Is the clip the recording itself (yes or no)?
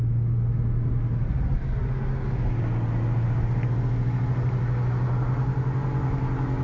yes